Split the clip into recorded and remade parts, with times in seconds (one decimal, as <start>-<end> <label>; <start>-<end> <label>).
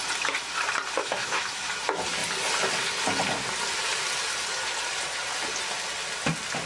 0.0-1.0 recorded; 1.0-1.7 remade; 1.7-6.7 recorded